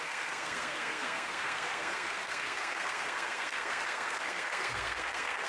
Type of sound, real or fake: fake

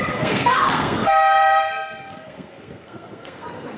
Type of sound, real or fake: fake